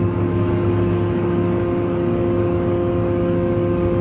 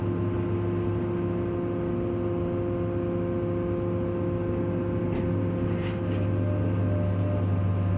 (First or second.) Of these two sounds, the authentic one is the second